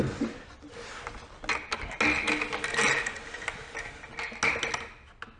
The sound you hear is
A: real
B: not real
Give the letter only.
A